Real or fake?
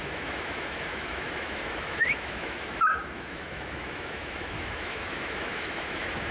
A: fake